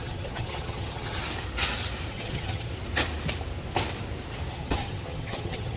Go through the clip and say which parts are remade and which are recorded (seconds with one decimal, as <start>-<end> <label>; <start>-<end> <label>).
0.0-1.2 remade; 1.2-2.1 recorded; 2.1-2.7 remade; 2.7-4.5 recorded; 4.5-5.8 remade